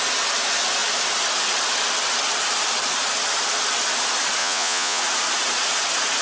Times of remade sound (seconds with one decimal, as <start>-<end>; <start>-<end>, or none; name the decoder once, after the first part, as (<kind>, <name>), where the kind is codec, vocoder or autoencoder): 4.4-5.0 (vocoder, Vocos)